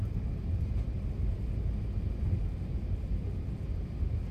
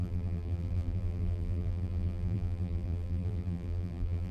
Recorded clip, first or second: first